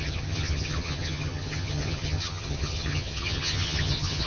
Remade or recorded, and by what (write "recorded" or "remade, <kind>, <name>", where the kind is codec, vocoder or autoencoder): remade, vocoder, HiFi-GAN